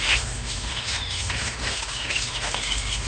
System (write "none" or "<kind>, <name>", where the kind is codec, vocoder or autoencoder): autoencoder, DAC-VAE